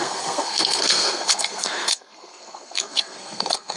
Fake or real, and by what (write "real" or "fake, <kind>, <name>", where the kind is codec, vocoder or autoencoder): fake, codec, SNAC